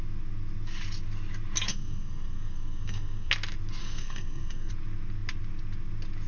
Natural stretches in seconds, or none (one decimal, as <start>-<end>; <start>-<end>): 0.0-1.7; 3.3-3.8; 4.7-6.3